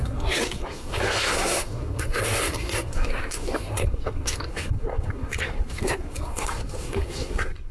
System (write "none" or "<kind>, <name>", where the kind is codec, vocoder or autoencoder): codec, SNAC